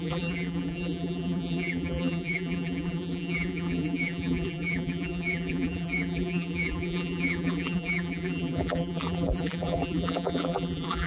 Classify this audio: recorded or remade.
remade